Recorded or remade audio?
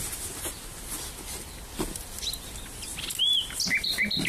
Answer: recorded